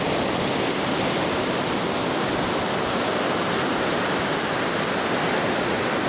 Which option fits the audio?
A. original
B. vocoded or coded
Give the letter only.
A